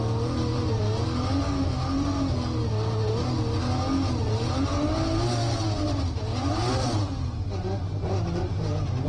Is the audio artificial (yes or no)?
no